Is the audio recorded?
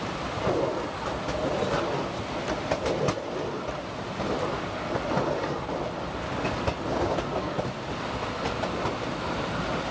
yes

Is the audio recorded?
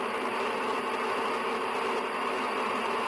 yes